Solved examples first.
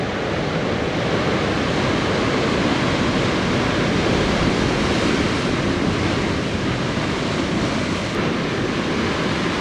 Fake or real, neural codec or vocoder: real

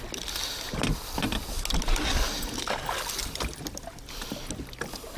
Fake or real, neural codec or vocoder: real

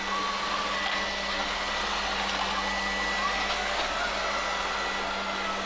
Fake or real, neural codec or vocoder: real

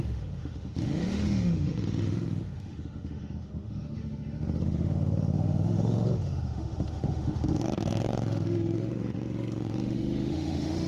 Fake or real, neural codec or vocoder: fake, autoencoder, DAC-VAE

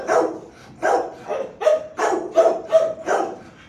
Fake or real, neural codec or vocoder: real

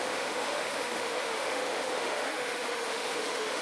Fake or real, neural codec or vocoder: fake, autoencoder, DAC-VAE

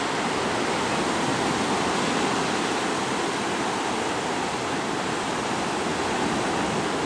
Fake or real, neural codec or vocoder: real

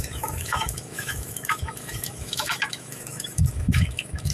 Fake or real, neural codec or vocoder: fake, autoencoder, DAC-VAE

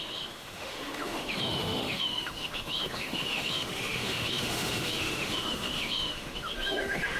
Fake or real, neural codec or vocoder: fake, autoencoder, DAC-VAE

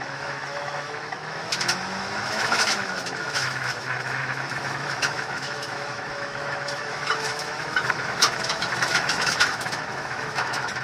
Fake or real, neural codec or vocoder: fake, autoencoder, DAC-VAE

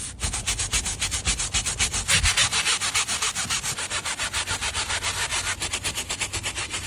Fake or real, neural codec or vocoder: real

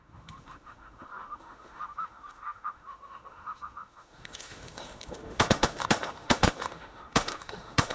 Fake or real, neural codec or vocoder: fake, autoencoder, DAC-VAE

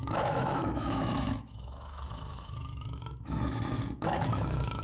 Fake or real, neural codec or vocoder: fake, autoencoder, DAC-VAE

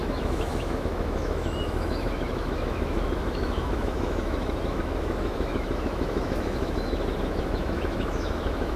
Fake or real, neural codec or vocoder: fake, autoencoder, DAC-VAE